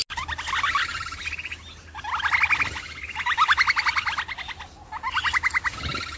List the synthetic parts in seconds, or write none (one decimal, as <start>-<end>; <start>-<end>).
none